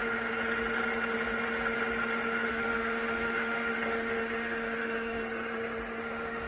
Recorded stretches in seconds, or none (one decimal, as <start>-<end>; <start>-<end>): 0.0-2.5; 5.2-6.0